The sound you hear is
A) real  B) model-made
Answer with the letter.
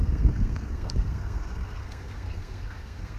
B